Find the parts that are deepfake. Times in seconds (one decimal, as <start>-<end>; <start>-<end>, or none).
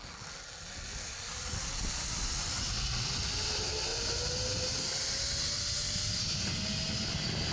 none